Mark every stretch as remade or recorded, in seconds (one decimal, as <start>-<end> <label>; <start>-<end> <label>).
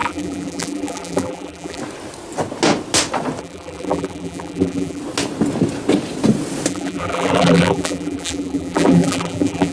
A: 0.0-1.8 remade; 1.8-3.4 recorded; 3.4-5.0 remade; 5.0-6.7 recorded; 6.7-9.7 remade